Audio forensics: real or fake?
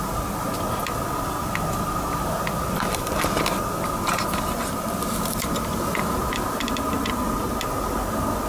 real